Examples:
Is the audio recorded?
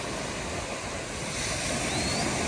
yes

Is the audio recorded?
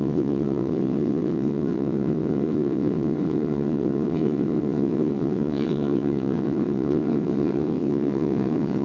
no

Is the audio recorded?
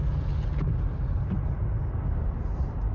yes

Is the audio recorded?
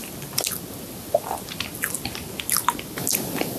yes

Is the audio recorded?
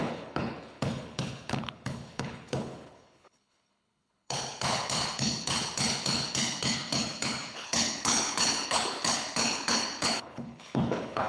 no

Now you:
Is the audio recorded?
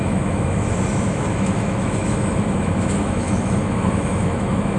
no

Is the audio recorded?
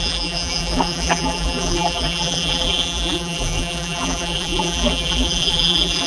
no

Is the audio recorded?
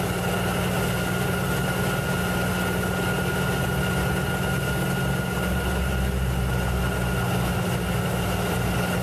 yes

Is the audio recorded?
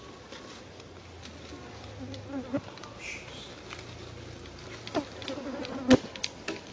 yes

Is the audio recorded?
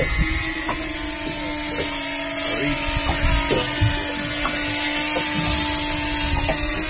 yes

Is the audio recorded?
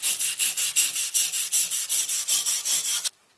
yes